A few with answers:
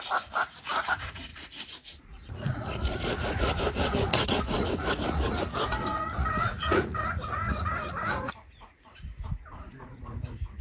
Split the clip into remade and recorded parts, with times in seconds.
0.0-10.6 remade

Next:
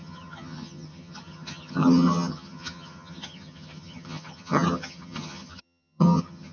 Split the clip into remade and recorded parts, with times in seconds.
0.0-6.5 remade